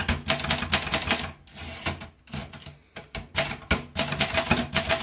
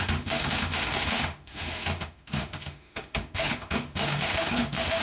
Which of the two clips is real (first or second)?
first